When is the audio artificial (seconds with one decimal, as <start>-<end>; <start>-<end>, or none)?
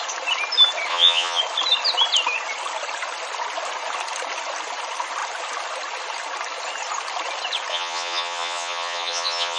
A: 0.9-1.4; 7.7-9.6